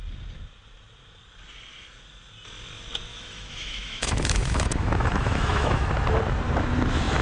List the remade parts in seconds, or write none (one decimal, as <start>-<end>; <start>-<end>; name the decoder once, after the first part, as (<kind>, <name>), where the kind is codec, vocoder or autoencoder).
3.1-5.9 (autoencoder, DAC-VAE)